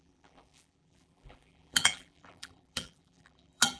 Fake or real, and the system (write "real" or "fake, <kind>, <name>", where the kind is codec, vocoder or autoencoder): fake, vocoder, BigVGAN v2